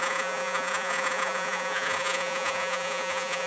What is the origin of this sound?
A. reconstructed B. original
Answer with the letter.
A